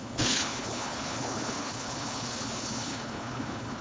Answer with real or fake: fake